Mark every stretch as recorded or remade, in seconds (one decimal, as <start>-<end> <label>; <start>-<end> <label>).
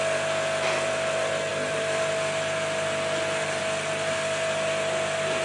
0.0-5.4 recorded